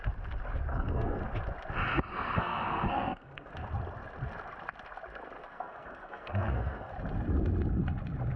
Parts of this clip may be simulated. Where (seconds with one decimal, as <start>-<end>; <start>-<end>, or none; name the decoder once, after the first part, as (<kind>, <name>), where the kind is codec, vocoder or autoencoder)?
0.7-1.2 (codec, SNAC); 2.1-3.5; 5.4-6.9